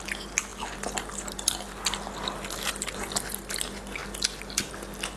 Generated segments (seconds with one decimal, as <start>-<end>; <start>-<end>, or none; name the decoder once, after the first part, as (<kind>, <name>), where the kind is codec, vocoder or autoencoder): 4.0-4.7 (vocoder, BigVGAN v2)